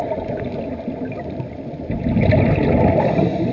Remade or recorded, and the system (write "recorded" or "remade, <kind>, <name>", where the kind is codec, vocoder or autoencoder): recorded